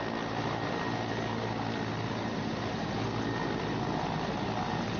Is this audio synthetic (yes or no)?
no